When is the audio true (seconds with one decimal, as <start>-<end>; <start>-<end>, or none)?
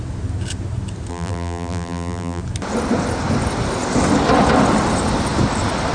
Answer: 0.0-1.1; 2.4-5.9